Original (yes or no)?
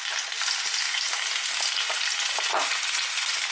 yes